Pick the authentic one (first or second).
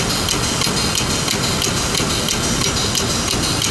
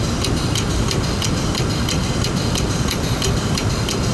first